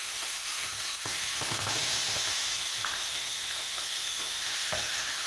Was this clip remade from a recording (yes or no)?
yes